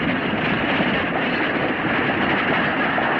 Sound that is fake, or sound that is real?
real